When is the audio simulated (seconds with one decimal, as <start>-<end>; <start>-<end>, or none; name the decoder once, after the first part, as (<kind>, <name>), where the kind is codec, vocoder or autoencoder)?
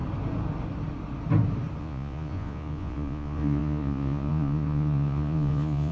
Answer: 1.8-5.9 (vocoder, Vocos)